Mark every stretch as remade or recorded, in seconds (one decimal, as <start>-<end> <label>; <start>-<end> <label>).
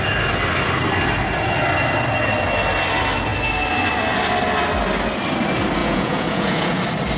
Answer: 0.0-5.8 recorded; 5.8-6.8 remade; 6.8-7.2 recorded